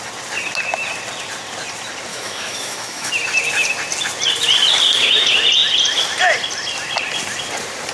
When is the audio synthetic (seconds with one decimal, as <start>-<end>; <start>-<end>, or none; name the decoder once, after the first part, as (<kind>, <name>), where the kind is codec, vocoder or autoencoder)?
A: 2.1-3.1 (autoencoder, DAC-VAE)